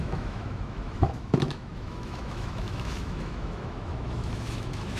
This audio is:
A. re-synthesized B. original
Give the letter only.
A